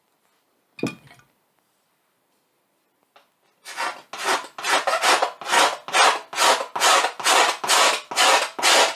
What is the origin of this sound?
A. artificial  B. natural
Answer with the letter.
B